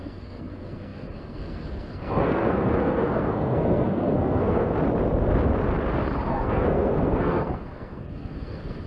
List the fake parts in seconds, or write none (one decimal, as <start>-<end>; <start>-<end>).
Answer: 0.0-4.7; 6.3-8.9